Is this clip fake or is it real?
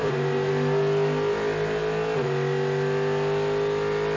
real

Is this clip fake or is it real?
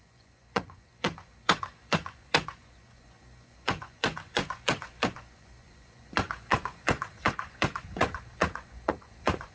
fake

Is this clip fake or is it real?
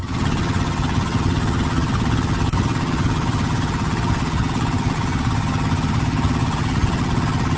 fake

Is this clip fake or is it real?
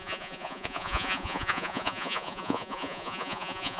fake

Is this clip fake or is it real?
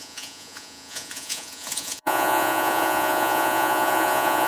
fake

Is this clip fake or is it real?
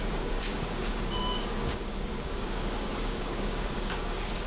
fake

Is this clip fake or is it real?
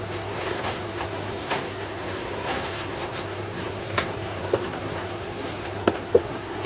fake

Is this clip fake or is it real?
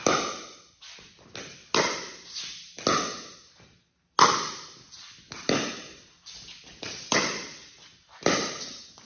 real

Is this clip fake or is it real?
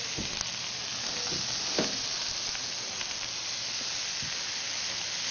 real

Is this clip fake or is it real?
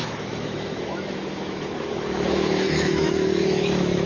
fake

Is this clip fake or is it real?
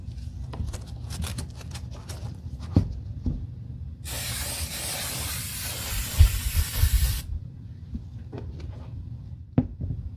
fake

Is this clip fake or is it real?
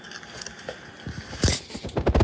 real